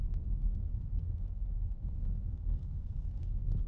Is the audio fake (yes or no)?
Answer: yes